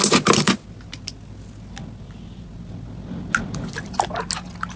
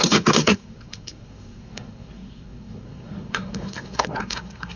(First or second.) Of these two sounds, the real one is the first